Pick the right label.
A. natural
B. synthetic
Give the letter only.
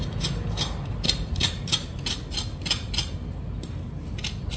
A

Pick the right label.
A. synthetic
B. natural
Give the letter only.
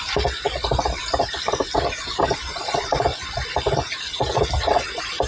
B